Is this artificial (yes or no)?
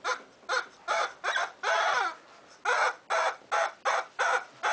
no